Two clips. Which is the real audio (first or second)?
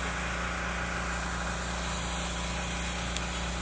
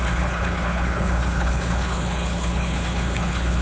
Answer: first